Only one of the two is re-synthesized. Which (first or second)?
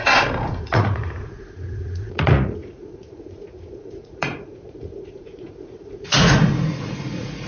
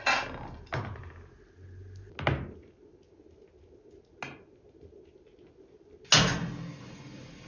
first